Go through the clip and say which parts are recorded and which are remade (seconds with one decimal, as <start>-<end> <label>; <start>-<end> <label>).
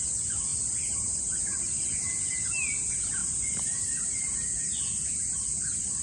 0.0-6.0 recorded